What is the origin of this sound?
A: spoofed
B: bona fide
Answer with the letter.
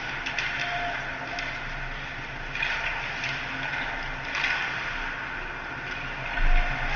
B